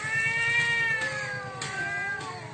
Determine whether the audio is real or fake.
real